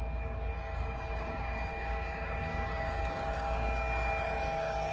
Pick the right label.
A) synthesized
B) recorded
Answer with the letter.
A